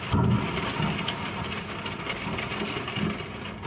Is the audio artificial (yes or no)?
no